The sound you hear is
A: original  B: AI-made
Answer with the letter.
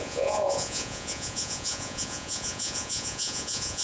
B